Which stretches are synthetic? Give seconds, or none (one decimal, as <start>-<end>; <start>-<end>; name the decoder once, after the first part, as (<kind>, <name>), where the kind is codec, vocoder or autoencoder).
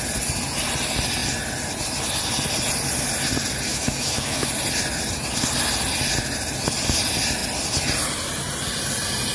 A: 3.7-4.5 (autoencoder, DAC-VAE)